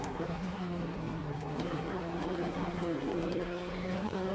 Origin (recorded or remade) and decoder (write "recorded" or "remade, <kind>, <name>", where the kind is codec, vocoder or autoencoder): remade, codec, SNAC